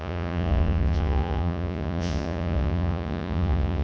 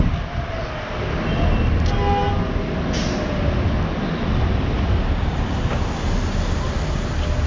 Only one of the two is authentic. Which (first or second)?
second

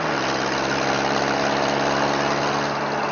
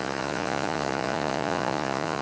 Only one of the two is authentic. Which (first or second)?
first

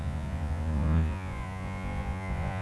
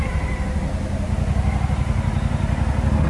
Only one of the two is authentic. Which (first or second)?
second